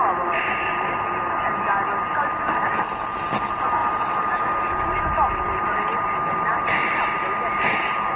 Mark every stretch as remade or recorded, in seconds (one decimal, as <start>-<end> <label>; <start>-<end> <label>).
0.0-8.2 recorded